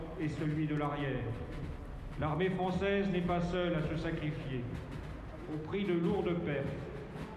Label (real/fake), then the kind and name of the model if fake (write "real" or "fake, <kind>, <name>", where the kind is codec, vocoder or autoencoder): real